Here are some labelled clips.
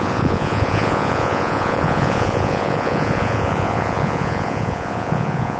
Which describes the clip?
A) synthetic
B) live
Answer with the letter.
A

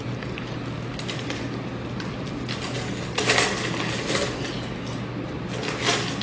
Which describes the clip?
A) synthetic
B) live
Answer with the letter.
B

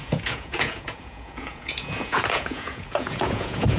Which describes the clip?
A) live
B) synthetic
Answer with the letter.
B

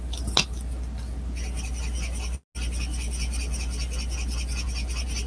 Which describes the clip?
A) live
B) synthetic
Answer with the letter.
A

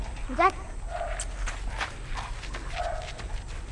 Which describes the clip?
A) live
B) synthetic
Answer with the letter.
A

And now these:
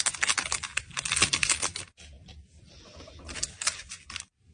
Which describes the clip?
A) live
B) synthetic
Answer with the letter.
A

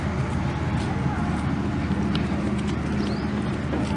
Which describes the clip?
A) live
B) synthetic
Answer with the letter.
A